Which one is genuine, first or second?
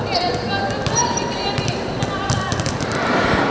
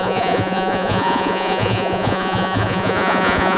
first